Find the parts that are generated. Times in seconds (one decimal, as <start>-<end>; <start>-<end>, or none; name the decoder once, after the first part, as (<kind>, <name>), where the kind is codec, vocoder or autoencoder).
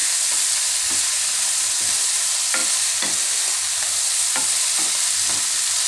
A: none